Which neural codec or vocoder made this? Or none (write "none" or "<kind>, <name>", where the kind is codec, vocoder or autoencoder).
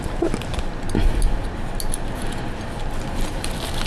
none